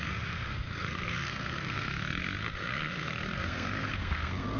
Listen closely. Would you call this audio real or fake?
fake